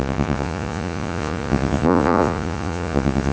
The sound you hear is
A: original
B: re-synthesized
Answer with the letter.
B